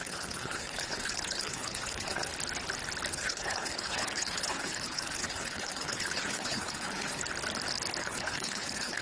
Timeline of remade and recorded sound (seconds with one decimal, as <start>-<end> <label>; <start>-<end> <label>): 0.0-2.3 remade; 2.3-3.1 recorded; 3.1-7.2 remade; 7.2-8.0 recorded; 8.0-9.0 remade